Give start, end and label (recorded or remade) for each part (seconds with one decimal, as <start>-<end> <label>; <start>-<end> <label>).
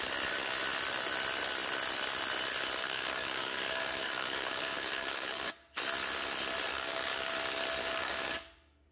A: 0.0-2.8 recorded; 2.8-5.5 remade; 5.5-6.7 recorded; 6.7-7.3 remade; 7.3-7.8 recorded; 7.8-8.9 remade